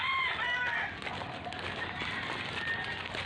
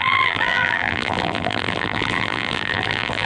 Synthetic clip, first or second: second